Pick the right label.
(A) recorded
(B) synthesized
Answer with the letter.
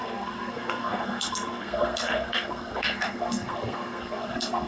B